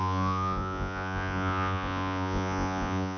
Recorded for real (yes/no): no